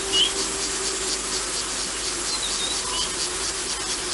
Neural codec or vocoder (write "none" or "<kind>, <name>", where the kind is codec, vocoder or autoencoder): none